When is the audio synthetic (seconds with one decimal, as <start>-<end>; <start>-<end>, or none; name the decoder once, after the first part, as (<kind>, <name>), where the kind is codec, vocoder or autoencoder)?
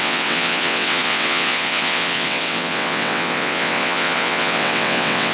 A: 0.0-5.3 (vocoder, WaveNeXt)